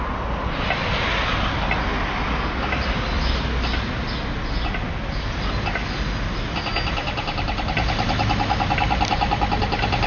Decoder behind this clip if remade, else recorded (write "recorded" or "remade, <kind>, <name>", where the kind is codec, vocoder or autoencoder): recorded